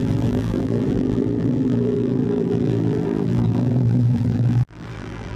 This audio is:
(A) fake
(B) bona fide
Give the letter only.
A